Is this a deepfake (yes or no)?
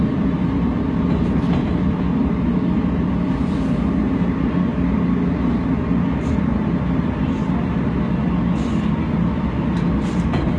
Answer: no